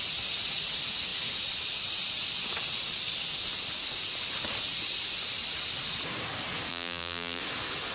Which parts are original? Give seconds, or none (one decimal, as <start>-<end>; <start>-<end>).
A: 0.0-6.7; 7.4-7.9